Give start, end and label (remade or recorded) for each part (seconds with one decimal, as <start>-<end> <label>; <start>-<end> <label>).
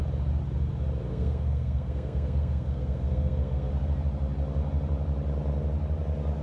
0.0-1.1 recorded; 1.1-3.7 remade; 3.7-6.4 recorded